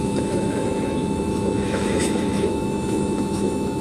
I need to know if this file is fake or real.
fake